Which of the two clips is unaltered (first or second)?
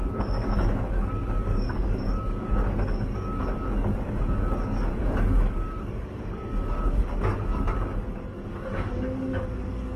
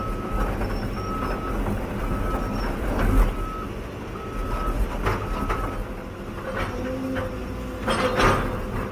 second